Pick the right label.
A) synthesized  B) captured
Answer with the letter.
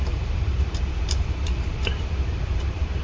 A